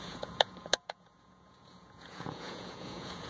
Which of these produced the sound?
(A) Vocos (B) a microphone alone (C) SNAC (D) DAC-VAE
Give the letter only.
A